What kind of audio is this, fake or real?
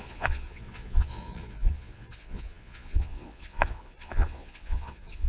fake